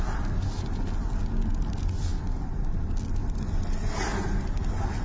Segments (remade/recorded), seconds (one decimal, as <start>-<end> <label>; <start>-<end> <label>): 0.0-5.0 recorded